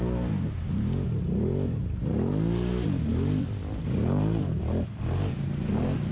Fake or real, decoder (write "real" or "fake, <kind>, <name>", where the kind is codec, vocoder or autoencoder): real